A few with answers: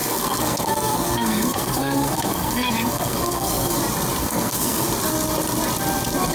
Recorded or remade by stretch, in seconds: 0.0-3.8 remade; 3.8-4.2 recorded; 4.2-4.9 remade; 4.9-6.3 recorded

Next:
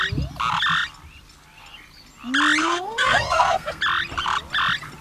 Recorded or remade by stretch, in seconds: 0.0-2.6 recorded; 2.6-3.8 remade; 3.8-5.0 recorded

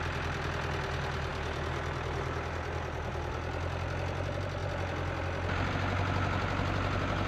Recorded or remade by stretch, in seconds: 0.0-7.3 recorded

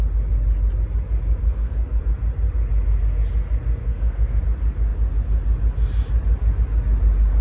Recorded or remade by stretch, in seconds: 0.0-1.4 recorded; 1.4-2.0 remade; 2.0-3.8 recorded; 3.8-4.4 remade; 4.4-7.4 recorded